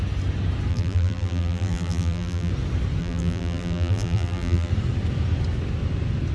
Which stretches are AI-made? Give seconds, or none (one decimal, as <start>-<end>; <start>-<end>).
0.7-2.5; 3.0-4.7